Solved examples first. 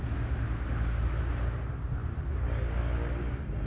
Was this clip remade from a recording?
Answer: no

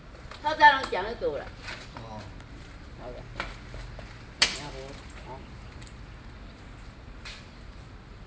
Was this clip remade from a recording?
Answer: no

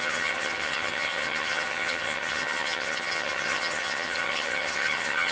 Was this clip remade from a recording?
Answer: yes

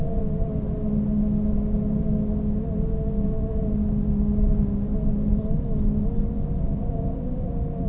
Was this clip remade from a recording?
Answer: no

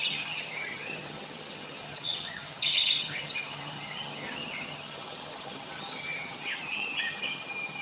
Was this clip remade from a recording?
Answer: yes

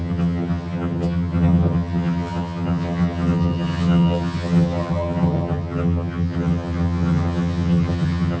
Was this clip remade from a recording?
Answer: yes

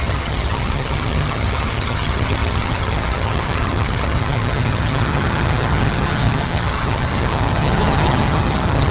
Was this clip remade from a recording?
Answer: yes